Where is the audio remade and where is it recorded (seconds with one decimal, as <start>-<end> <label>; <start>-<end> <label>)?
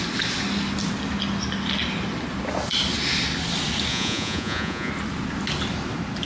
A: 0.0-3.9 recorded; 3.9-4.9 remade; 4.9-6.3 recorded